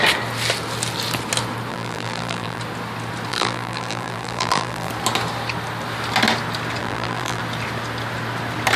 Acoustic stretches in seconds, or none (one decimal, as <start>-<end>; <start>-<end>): 0.0-1.7; 2.6-3.3; 4.9-6.8; 7.4-8.8